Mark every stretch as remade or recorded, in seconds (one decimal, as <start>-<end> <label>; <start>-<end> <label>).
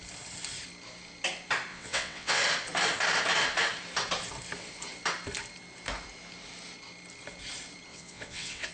0.0-1.7 recorded; 1.7-2.4 remade; 2.4-7.9 recorded; 7.9-8.7 remade